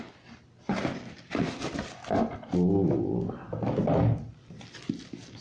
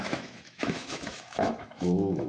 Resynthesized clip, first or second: second